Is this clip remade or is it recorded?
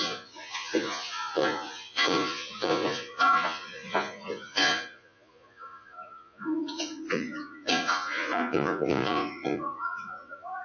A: remade